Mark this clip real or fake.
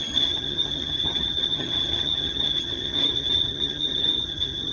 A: fake